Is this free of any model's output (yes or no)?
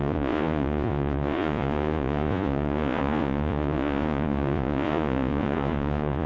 no